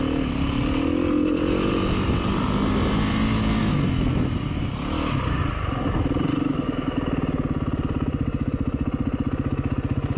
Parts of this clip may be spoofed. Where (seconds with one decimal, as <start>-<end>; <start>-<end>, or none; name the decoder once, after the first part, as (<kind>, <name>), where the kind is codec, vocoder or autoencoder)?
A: none